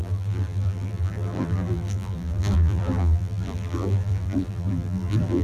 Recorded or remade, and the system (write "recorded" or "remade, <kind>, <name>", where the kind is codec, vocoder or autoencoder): remade, vocoder, BigVGAN v2